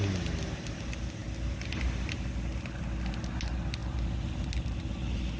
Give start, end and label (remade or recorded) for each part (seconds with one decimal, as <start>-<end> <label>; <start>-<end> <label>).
0.0-5.4 recorded